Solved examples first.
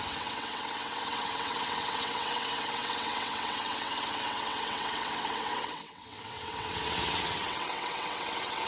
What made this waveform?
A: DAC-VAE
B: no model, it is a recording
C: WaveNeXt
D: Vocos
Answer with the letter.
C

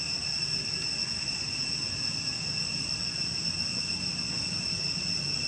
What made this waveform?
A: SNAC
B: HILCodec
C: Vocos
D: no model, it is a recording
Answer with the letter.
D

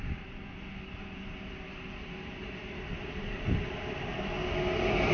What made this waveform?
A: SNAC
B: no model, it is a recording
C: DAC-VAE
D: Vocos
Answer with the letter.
B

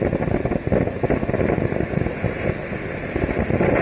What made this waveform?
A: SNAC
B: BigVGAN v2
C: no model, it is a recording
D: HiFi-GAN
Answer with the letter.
C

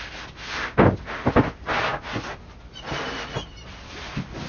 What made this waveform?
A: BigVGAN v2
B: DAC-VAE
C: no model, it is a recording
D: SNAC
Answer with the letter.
C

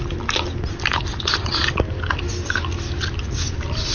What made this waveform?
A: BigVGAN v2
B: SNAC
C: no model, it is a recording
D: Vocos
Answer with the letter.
C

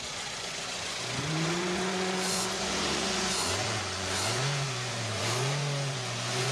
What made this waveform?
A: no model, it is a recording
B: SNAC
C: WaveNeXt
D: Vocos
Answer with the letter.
D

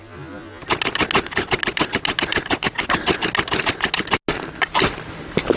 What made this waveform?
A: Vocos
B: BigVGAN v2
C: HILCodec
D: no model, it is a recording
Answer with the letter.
D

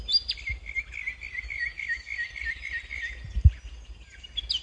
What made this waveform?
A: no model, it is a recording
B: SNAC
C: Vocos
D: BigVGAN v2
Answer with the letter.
A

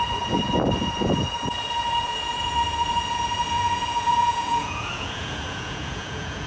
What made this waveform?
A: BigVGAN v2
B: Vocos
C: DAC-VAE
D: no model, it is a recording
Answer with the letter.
B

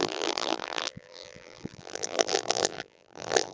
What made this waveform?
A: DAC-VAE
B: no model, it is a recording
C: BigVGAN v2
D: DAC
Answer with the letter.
C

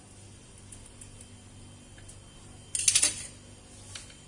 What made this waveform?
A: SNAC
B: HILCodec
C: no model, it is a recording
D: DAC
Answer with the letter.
C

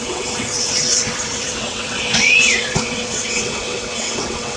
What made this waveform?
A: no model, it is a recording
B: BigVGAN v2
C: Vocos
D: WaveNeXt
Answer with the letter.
D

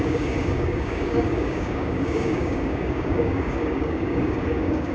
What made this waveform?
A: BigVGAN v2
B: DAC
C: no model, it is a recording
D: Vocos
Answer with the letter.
B